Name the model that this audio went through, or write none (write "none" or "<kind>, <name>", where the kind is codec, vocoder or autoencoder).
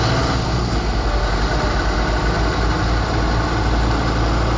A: none